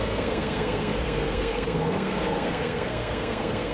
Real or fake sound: fake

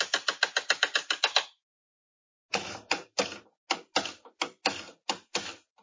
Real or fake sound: real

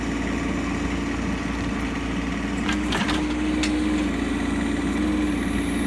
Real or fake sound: real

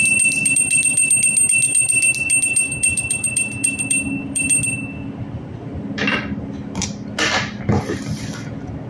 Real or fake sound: fake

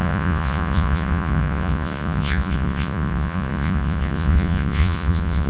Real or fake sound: fake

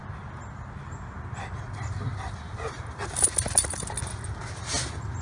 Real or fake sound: real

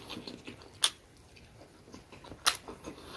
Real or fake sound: real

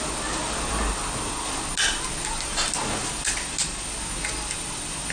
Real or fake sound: real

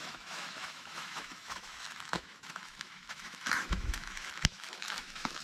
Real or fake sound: fake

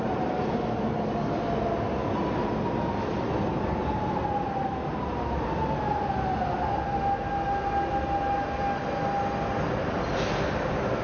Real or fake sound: real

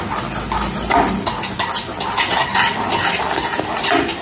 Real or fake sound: real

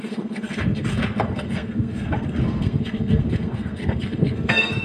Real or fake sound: fake